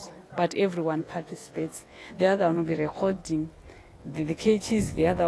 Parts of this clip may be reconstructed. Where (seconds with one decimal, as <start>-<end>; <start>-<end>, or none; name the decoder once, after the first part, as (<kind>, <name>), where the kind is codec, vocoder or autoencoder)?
1.0-3.2 (vocoder, WaveNeXt); 4.0-5.3